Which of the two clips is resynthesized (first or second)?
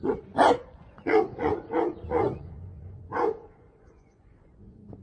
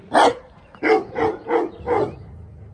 first